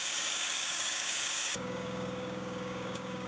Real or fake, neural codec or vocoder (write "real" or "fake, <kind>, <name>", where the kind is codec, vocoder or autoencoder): fake, codec, DAC